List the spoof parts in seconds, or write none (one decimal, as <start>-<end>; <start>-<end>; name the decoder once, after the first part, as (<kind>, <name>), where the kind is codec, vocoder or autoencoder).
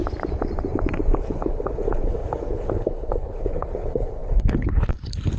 1.2-5.4 (codec, HILCodec)